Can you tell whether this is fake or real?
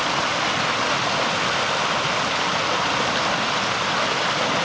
real